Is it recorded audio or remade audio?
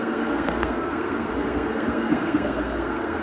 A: remade